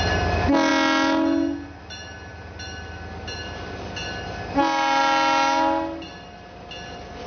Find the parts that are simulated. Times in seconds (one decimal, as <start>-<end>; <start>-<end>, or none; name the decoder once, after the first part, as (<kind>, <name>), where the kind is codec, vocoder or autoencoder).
none